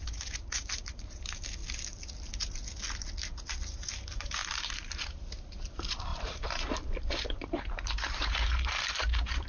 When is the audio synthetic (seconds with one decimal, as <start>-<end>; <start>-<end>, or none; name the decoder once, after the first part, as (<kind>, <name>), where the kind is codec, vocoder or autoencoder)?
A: 0.0-1.6 (vocoder, BigVGAN v2); 3.5-9.5